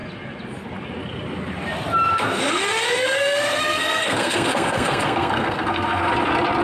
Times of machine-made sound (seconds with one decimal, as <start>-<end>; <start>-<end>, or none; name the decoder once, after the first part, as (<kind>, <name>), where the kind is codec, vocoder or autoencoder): 2.1-6.1 (codec, SNAC)